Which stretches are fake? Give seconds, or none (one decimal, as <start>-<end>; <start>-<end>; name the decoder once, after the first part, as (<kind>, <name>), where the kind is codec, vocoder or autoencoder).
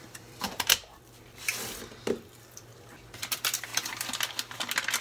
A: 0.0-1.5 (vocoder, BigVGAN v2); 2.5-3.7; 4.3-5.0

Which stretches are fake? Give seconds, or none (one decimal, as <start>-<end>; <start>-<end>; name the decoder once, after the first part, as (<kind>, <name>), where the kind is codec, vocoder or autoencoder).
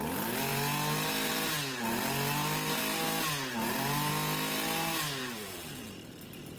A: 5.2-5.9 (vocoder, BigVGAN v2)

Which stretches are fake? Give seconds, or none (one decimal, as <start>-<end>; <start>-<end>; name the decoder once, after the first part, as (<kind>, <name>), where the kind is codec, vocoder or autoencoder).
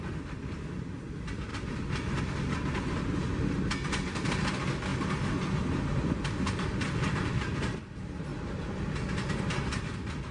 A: 1.5-2.2 (vocoder, BigVGAN v2)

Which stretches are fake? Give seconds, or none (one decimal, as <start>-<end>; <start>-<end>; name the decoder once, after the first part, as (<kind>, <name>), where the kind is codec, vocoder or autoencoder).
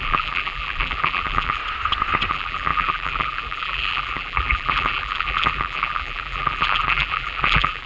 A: 0.0-1.6 (vocoder, BigVGAN v2); 2.3-7.9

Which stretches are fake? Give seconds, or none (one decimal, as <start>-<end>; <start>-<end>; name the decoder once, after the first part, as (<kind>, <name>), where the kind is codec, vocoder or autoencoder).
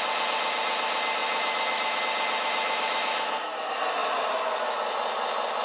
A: 1.2-2.0 (vocoder, BigVGAN v2); 4.0-4.6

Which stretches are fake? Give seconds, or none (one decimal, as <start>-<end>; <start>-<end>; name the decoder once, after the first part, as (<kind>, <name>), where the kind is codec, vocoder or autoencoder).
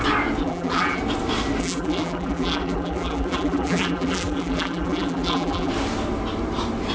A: 0.4-1.0 (vocoder, BigVGAN v2); 1.6-5.7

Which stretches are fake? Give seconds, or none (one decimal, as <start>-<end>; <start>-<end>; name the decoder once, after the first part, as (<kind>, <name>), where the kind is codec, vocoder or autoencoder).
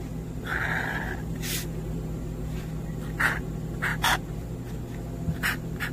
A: 3.9-4.6 (vocoder, BigVGAN v2)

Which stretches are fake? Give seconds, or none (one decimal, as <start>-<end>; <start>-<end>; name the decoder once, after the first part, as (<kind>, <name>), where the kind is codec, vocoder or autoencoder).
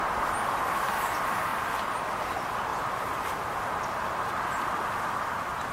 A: 2.7-5.0 (vocoder, BigVGAN v2)